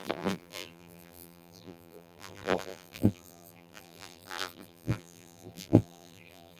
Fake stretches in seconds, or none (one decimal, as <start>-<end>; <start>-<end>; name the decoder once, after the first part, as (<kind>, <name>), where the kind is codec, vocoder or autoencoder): 0.0-6.6 (vocoder, BigVGAN v2)